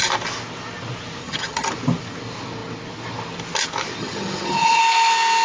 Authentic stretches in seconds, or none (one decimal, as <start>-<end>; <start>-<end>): 0.0-1.2; 1.7-4.0; 4.8-5.4